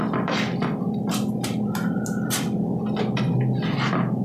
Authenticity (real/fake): real